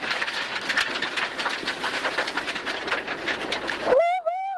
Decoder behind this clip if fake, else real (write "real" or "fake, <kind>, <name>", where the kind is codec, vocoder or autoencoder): fake, vocoder, BigVGAN v2